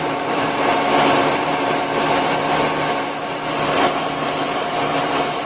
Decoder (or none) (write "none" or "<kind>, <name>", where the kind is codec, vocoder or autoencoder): vocoder, BigVGAN v2